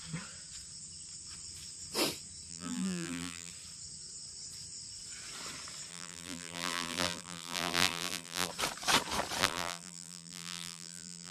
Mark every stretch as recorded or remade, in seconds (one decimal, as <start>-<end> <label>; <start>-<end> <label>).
0.0-2.5 recorded; 2.5-3.5 remade; 3.5-5.9 recorded; 5.9-8.5 remade; 8.5-9.4 recorded; 9.4-11.3 remade